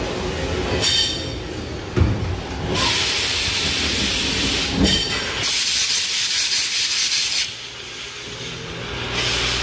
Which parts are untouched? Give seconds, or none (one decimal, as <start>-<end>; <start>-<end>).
0.0-9.6